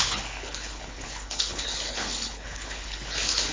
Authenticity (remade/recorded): remade